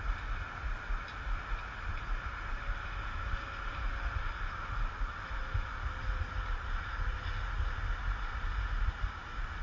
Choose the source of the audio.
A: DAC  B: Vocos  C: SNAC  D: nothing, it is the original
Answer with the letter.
D